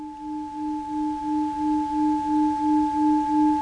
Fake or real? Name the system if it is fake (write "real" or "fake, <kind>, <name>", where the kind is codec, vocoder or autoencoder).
real